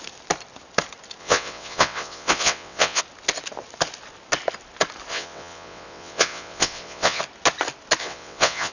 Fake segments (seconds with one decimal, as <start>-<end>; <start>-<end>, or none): 1.2-3.0; 5.1-7.2; 8.0-8.7